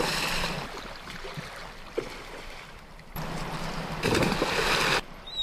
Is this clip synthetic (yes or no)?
yes